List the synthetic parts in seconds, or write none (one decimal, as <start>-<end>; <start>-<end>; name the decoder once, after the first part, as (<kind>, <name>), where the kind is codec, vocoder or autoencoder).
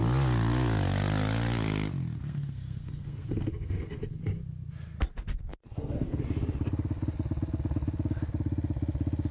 2.2-4.2 (codec, SNAC); 5.5-6.2